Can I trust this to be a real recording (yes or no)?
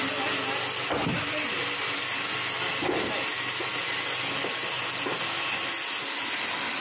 yes